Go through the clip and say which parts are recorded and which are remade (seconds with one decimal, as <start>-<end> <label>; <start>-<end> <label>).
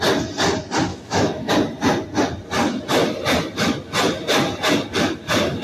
0.0-0.9 recorded; 0.9-1.5 remade; 1.5-5.6 recorded